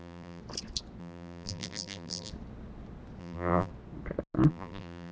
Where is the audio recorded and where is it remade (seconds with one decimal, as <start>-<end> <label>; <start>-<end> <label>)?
0.0-0.4 remade; 0.4-1.0 recorded; 1.0-2.3 remade; 2.3-3.2 recorded; 3.2-3.7 remade; 3.7-4.5 recorded; 4.5-5.1 remade

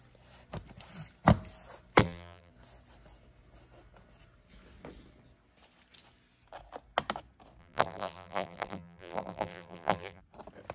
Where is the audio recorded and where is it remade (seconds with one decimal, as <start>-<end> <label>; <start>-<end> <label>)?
0.0-2.0 recorded; 2.0-2.5 remade; 2.5-7.6 recorded; 7.6-10.2 remade; 10.2-10.7 recorded